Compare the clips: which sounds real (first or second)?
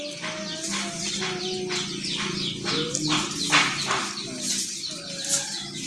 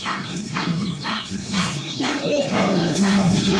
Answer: first